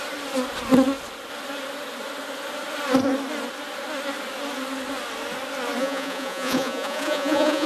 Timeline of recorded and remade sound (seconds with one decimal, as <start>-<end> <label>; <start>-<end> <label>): 0.0-5.8 recorded; 5.8-7.7 remade